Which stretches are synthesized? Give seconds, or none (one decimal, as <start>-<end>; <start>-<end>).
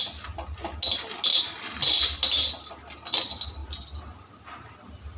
none